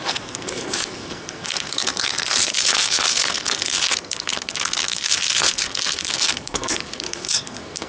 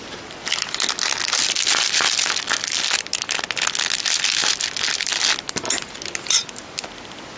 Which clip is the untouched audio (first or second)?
second